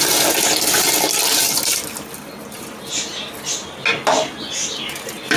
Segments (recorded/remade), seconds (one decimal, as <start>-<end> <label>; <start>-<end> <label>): 0.0-5.4 recorded